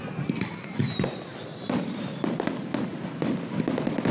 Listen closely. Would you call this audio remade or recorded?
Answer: recorded